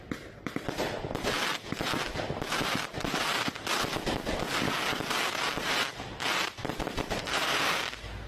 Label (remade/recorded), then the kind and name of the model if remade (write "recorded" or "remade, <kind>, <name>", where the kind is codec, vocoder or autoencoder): remade, vocoder, BigVGAN v2